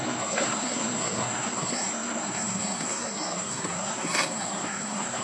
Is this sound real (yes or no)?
no